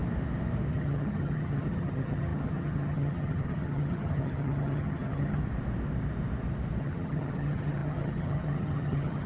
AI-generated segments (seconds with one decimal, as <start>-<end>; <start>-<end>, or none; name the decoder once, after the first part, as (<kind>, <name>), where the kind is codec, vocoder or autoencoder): 0.7-5.4 (vocoder, HiFi-GAN); 6.8-9.3